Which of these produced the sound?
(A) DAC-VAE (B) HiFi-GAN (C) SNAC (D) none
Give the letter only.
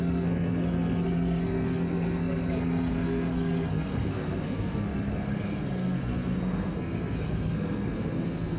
C